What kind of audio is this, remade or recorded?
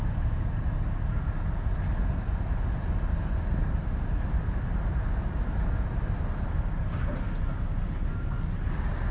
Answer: recorded